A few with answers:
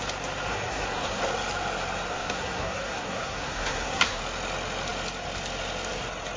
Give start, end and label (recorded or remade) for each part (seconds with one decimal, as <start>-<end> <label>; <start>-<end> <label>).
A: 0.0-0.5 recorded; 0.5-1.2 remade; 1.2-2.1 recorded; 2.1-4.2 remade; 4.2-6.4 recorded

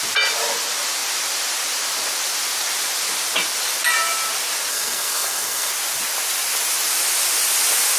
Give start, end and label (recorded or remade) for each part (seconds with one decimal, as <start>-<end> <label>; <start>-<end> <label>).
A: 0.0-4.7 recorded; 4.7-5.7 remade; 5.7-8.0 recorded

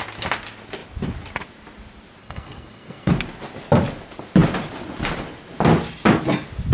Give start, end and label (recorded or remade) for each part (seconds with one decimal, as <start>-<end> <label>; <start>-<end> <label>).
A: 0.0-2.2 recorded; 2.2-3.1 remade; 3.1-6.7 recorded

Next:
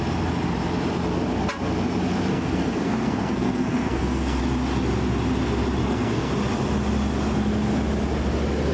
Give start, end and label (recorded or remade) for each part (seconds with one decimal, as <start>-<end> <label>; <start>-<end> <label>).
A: 0.0-2.3 recorded; 2.3-4.4 remade; 4.4-5.8 recorded; 5.8-6.3 remade; 6.3-8.7 recorded

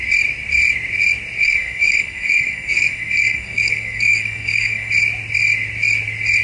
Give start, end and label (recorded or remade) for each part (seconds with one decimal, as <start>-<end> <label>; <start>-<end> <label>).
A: 0.0-1.4 recorded; 1.4-4.9 remade; 4.9-6.4 recorded